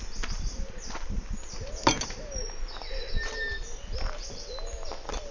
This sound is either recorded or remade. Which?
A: recorded